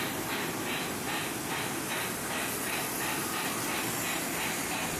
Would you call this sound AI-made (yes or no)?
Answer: yes